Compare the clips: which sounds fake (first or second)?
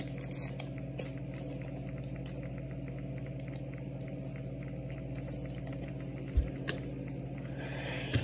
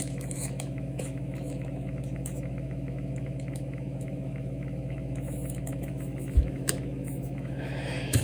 second